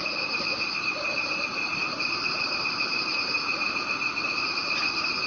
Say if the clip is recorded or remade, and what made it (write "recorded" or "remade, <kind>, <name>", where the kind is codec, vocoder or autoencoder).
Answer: remade, vocoder, BigVGAN v2